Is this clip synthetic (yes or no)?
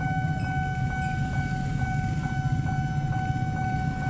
no